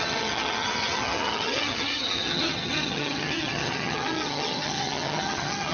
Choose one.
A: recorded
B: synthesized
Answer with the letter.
B